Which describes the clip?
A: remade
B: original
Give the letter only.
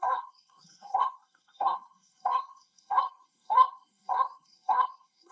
A